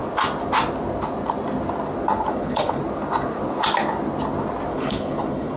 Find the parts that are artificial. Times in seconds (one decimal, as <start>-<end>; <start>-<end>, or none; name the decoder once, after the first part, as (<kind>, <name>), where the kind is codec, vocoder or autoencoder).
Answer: 2.3-2.8 (codec, HILCodec); 4.7-5.6